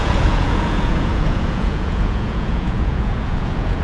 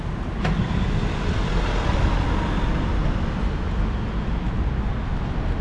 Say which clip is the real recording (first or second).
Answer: second